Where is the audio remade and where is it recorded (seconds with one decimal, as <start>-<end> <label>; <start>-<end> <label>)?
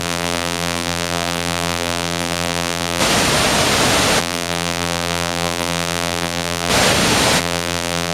0.0-3.0 remade; 3.0-4.2 recorded; 4.2-6.7 remade; 6.7-7.4 recorded; 7.4-8.1 remade